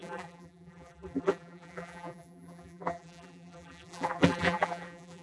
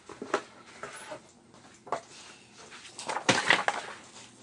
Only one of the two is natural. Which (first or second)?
second